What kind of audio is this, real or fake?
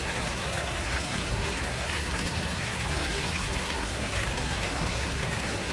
fake